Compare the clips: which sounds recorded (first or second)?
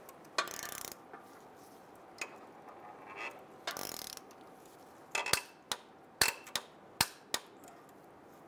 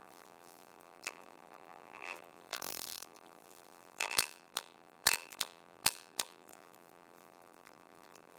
first